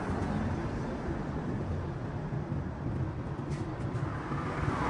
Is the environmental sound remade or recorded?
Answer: recorded